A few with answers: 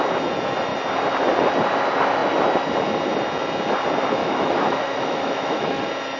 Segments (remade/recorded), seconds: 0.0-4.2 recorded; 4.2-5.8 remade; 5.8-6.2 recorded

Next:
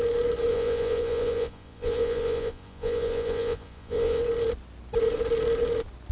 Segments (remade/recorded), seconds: 0.0-0.5 recorded; 0.5-4.2 remade; 4.2-6.1 recorded

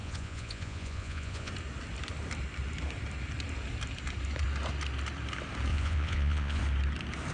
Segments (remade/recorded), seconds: 0.0-1.5 remade; 1.5-5.7 recorded; 5.7-6.6 remade; 6.6-7.3 recorded